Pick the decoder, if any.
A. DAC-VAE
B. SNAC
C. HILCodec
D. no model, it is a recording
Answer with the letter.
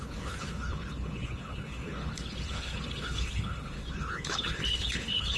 C